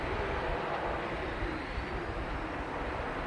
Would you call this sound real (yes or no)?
yes